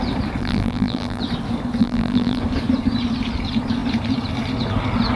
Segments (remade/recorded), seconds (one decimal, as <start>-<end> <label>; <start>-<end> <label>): 0.0-0.4 recorded; 0.4-1.2 remade; 1.2-1.8 recorded; 1.8-2.4 remade; 2.4-5.2 recorded